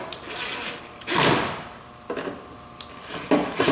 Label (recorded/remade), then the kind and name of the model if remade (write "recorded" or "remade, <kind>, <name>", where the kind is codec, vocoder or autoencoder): recorded